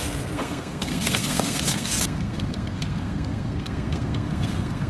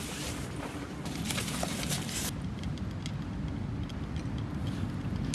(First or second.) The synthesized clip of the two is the first